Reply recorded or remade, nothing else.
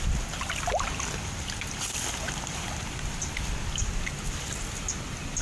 recorded